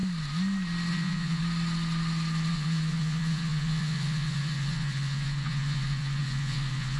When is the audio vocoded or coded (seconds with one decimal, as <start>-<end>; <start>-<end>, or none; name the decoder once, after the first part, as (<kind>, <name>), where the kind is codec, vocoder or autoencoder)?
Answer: 0.9-1.4 (vocoder, Vocos); 2.5-7.0